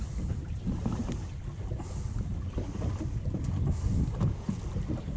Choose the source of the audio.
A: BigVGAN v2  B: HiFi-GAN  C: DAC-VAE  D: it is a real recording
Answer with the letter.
D